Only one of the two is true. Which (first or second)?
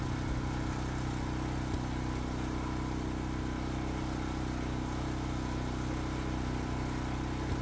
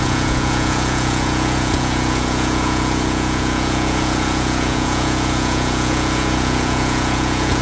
first